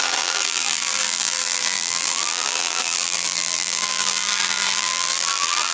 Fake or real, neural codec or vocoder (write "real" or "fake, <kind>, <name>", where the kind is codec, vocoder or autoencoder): fake, vocoder, BigVGAN v2